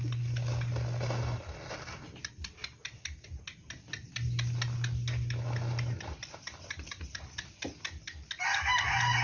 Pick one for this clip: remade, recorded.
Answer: recorded